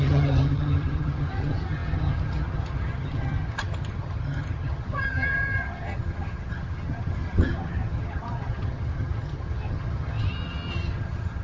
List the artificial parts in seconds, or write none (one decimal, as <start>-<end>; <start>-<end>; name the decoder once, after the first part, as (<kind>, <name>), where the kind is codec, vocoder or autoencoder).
0.0-11.4 (vocoder, HiFi-GAN)